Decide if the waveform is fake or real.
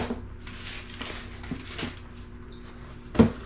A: real